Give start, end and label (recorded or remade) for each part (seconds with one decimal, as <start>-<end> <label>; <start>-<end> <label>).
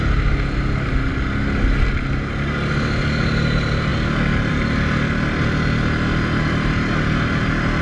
0.0-7.8 recorded